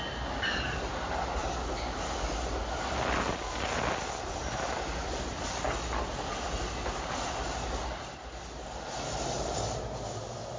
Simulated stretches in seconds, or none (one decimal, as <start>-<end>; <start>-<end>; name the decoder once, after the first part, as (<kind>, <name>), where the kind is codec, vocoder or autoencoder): none